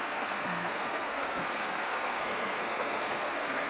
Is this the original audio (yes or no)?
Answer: no